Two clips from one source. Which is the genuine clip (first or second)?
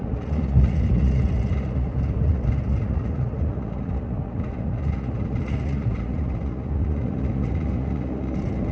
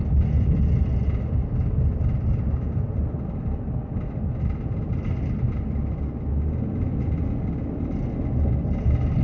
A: second